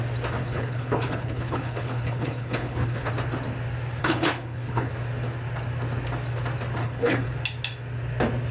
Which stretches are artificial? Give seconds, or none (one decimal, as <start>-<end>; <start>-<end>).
0.4-3.1; 4.0-4.9; 6.8-7.3